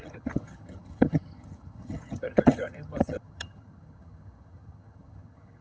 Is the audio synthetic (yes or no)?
yes